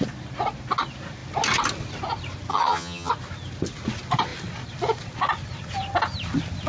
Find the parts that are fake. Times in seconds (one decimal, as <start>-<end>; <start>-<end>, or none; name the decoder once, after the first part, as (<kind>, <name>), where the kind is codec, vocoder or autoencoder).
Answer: 2.5-3.1 (vocoder, HiFi-GAN)